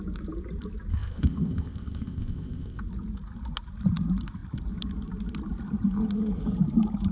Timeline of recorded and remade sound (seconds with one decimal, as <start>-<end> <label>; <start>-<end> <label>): 0.0-0.9 recorded; 0.9-2.8 remade; 2.8-7.1 recorded